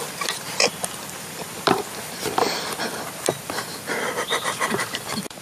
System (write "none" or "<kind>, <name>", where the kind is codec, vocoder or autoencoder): vocoder, BigVGAN v2